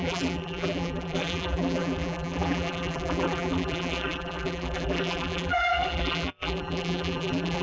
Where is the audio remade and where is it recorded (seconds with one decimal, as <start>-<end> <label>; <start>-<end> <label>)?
0.0-7.6 remade